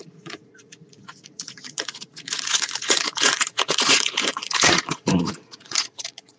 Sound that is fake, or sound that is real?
fake